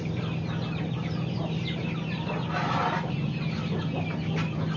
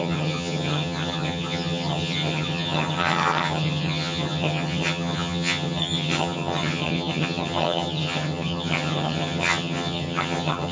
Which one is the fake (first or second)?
second